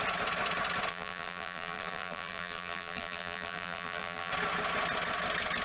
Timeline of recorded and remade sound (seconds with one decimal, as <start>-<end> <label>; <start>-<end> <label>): 0.0-0.9 recorded; 0.9-4.3 remade; 4.3-5.6 recorded